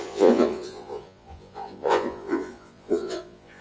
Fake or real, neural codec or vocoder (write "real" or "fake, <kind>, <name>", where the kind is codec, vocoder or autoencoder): fake, vocoder, Vocos